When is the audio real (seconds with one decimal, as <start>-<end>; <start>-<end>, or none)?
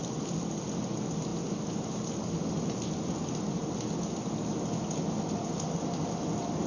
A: 0.0-6.7